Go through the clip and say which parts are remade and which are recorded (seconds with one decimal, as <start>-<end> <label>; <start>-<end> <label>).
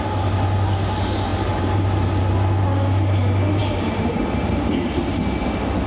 0.0-1.3 recorded; 1.3-2.3 remade; 2.3-3.6 recorded; 3.6-4.5 remade; 4.5-5.9 recorded